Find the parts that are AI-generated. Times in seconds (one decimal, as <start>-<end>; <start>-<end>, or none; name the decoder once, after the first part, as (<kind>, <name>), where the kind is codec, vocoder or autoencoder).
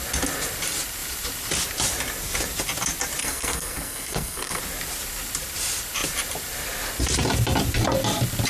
3.2-4.6 (codec, SNAC)